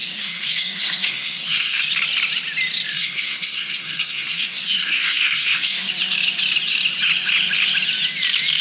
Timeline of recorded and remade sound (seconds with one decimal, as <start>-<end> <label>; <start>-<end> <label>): 0.0-1.9 remade; 1.9-2.9 recorded; 2.9-5.9 remade; 5.9-8.6 recorded